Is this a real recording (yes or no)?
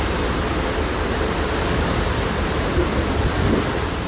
yes